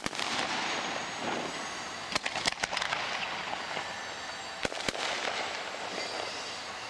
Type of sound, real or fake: real